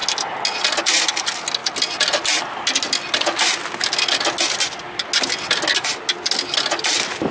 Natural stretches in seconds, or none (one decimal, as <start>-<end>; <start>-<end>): 0.0-7.3